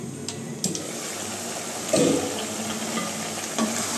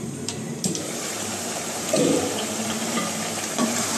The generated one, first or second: second